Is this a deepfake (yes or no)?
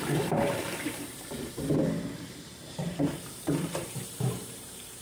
yes